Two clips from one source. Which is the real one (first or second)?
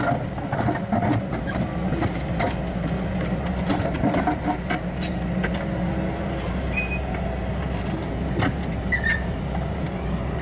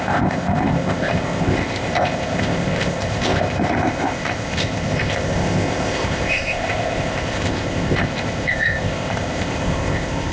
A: first